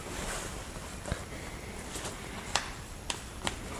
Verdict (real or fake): real